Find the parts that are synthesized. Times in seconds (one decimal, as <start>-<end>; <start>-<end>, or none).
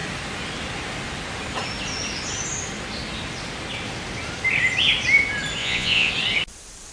5.6-6.1